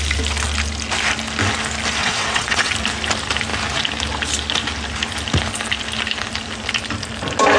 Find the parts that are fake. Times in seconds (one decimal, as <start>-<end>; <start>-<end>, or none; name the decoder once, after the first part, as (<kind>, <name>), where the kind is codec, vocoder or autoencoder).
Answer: 2.0-2.7 (vocoder, WaveNeXt)